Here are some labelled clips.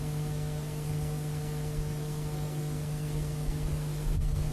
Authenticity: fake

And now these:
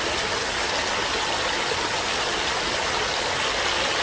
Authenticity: real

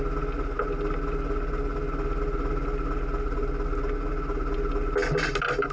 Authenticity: real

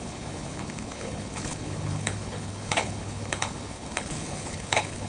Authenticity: fake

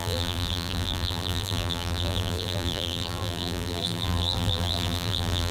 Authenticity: fake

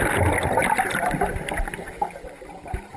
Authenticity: real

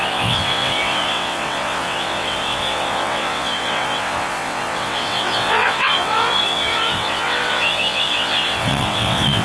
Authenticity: fake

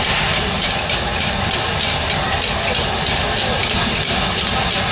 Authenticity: real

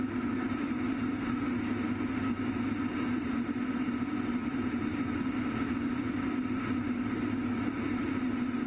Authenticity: real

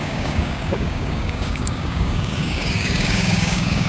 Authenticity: fake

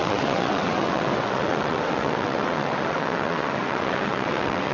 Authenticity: fake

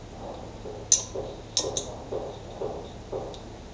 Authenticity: real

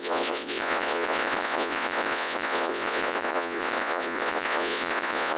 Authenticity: fake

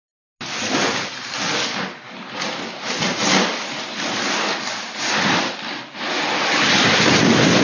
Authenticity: real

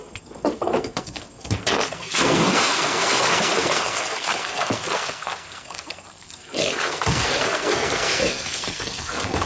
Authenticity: fake